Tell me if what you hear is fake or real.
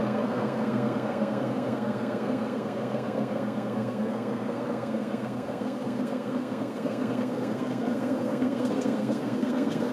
fake